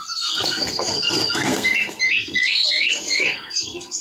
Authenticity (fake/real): fake